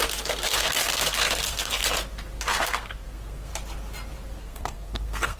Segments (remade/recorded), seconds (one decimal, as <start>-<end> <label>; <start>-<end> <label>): 0.0-1.8 remade; 1.8-2.4 recorded; 2.4-3.5 remade; 3.5-4.4 recorded; 4.4-5.4 remade